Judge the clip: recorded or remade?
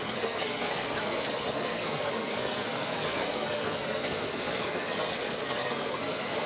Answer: remade